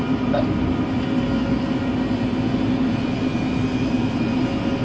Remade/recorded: recorded